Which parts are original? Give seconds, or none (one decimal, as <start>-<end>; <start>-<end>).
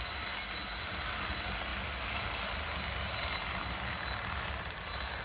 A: 0.0-5.2